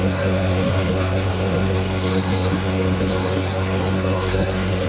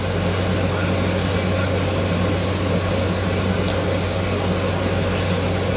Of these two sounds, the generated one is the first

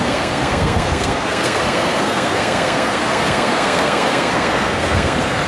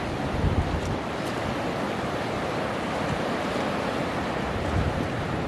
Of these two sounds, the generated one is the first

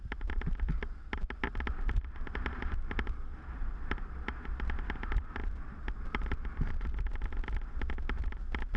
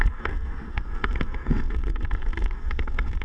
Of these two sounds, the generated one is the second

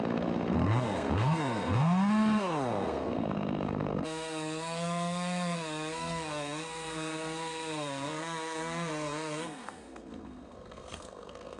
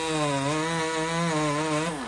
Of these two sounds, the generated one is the first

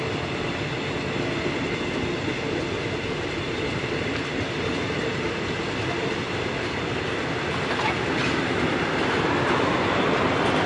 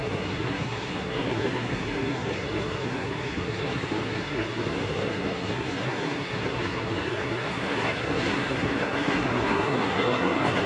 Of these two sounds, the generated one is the second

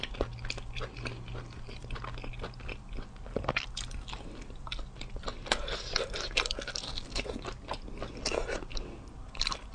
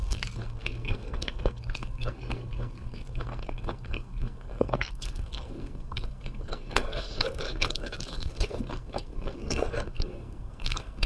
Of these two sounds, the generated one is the second